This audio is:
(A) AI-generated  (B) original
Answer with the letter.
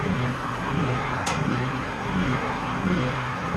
A